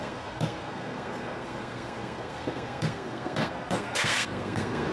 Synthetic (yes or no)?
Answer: yes